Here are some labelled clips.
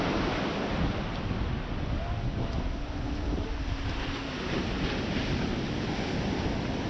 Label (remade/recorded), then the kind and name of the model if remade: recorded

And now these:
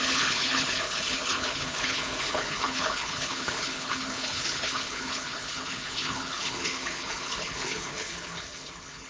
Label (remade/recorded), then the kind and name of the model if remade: remade, codec, HILCodec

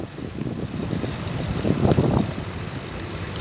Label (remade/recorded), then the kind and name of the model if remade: remade, vocoder, BigVGAN v2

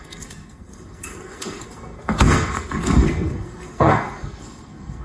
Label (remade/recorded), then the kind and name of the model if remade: remade, codec, SNAC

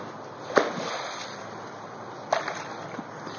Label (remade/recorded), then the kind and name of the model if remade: recorded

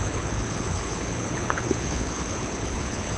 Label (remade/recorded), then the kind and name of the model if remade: remade, codec, HILCodec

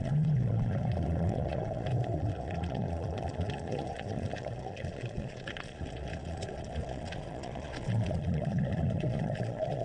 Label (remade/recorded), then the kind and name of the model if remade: remade, vocoder, Vocos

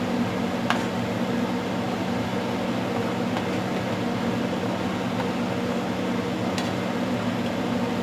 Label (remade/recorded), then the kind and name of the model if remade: recorded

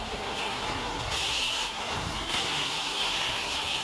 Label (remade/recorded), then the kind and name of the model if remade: remade, codec, SNAC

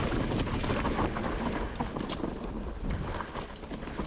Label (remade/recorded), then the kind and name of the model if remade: recorded